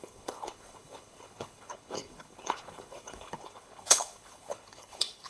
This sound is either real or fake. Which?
fake